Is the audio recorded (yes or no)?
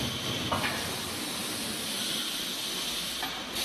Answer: yes